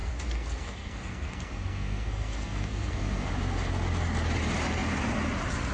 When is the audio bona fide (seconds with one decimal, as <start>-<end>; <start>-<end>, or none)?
3.3-5.7